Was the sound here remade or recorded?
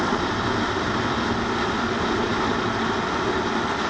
recorded